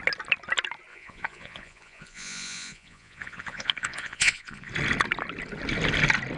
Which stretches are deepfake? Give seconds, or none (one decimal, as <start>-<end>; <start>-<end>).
0.9-4.7